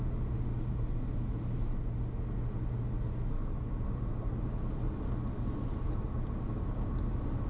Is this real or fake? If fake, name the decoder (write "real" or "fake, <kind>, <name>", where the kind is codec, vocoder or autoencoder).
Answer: real